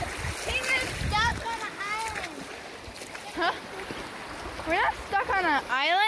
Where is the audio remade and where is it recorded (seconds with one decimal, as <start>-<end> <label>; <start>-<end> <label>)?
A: 0.0-6.1 recorded